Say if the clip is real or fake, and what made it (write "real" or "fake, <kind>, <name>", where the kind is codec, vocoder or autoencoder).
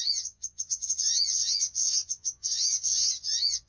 fake, vocoder, Vocos